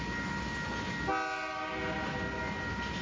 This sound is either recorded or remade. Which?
recorded